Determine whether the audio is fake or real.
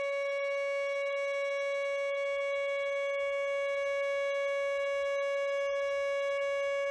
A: real